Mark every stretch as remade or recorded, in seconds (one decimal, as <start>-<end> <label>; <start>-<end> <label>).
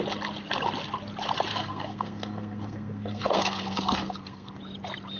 0.0-1.5 recorded; 1.5-4.6 remade; 4.6-5.2 recorded